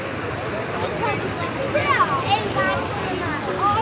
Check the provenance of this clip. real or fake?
real